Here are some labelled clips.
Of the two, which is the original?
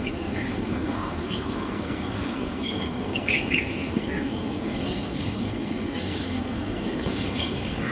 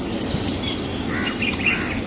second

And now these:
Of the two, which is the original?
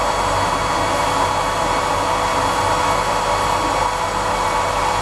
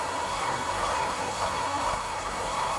first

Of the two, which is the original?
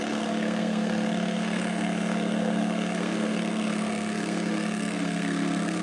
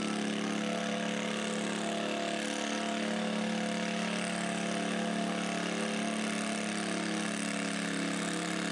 second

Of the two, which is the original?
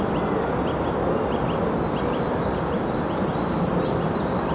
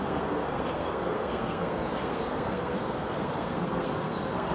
first